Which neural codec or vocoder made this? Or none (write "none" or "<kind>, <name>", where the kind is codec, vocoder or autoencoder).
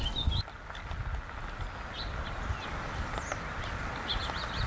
none